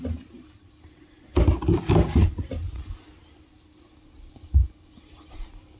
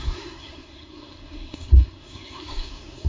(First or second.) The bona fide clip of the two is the first